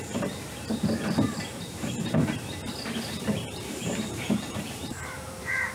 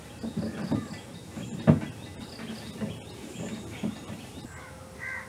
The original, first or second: second